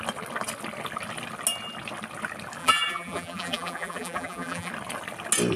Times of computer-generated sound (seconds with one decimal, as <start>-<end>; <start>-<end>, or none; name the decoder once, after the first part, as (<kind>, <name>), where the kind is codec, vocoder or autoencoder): 2.6-4.7 (vocoder, BigVGAN v2)